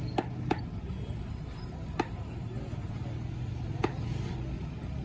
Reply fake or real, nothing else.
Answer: real